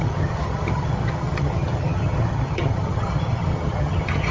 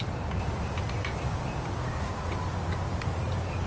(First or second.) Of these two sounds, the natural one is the second